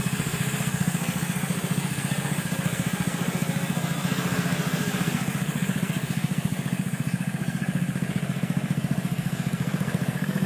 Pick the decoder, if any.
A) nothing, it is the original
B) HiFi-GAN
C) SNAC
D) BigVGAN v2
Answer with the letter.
C